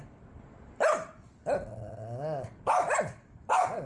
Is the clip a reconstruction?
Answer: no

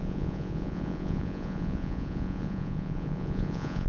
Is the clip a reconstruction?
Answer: yes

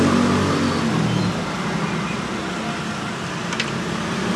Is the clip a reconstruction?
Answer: no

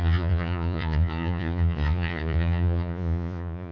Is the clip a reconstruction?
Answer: yes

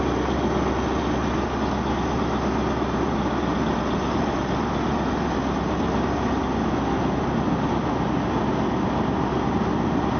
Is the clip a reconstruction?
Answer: no